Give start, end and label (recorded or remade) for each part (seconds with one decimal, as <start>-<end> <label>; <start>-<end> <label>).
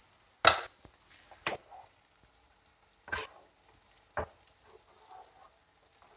0.0-6.2 recorded